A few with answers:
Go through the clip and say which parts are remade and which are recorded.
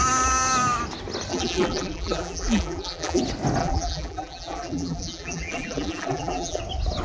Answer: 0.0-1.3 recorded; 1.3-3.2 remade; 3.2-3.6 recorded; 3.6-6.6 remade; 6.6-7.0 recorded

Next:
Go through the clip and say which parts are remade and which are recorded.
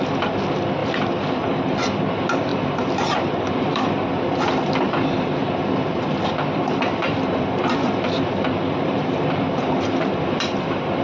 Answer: 0.0-0.8 recorded; 0.8-1.6 remade; 1.6-2.5 recorded; 2.5-4.1 remade; 4.1-6.9 recorded; 6.9-11.0 remade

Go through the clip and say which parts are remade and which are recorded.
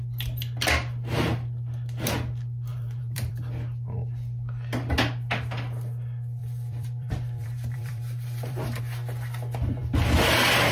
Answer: 0.0-2.7 recorded; 2.7-3.4 remade; 3.4-6.4 recorded; 6.4-8.8 remade; 8.8-10.7 recorded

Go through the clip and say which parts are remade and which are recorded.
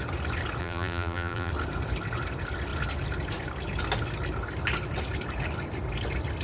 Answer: 0.0-0.6 recorded; 0.6-1.5 remade; 1.5-6.4 recorded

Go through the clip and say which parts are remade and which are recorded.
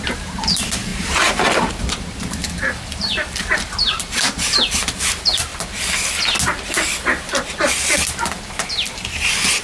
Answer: 0.0-5.5 remade; 5.5-8.6 recorded; 8.6-9.6 remade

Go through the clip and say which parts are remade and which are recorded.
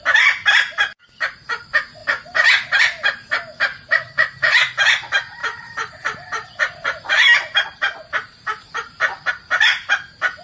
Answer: 0.0-3.7 recorded; 3.7-4.7 remade; 4.7-5.4 recorded; 5.4-9.3 remade; 9.3-10.4 recorded